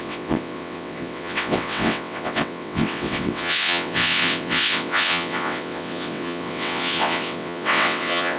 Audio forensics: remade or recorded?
remade